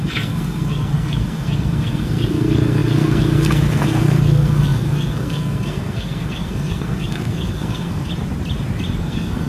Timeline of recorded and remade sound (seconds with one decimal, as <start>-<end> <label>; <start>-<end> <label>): 0.0-8.1 remade; 8.1-9.0 recorded; 9.0-9.5 remade